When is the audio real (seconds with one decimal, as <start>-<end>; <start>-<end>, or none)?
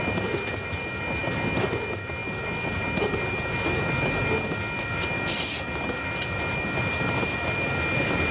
0.0-8.3